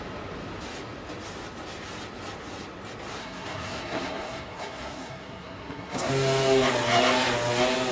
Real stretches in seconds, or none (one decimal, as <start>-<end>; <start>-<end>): 0.0-3.2; 6.1-7.9